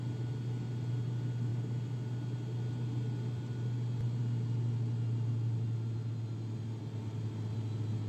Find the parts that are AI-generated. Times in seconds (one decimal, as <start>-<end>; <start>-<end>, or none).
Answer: none